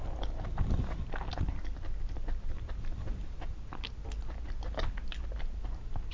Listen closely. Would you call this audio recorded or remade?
recorded